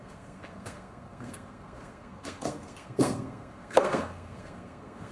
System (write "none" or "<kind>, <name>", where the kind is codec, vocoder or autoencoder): codec, SNAC